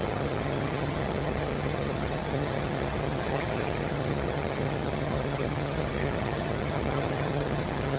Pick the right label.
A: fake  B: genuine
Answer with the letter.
A